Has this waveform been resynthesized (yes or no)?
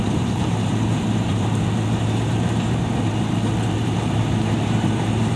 yes